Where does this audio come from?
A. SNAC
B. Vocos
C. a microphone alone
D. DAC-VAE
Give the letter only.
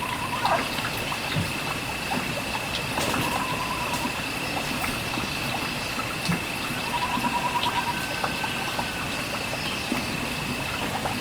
C